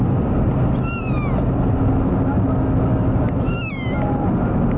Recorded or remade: recorded